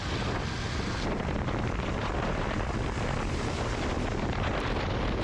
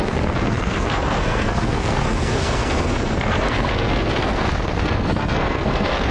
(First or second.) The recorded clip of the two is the first